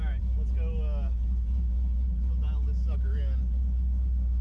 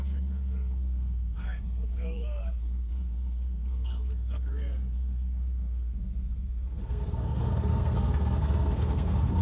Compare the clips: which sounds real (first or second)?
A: first